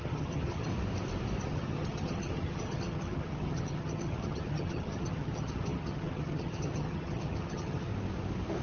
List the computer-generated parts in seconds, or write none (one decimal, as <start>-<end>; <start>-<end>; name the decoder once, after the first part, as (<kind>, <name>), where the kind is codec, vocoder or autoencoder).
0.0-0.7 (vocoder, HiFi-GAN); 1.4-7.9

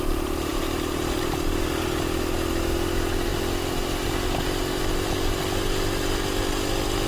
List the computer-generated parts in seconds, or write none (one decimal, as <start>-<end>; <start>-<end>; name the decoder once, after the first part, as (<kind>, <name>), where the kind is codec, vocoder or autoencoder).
0.5-1.6 (vocoder, BigVGAN v2)

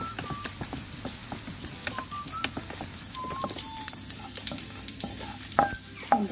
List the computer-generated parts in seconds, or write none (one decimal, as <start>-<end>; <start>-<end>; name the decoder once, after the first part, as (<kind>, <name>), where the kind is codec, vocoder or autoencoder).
none

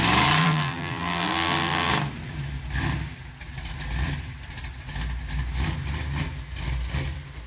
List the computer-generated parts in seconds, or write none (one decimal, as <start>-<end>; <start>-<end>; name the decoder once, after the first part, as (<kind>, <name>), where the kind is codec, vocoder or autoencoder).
0.4-1.9 (vocoder, BigVGAN v2)

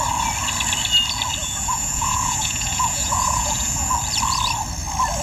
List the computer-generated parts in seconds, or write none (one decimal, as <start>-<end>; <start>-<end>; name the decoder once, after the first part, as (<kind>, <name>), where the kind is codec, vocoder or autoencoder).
1.4-3.9 (vocoder, Vocos)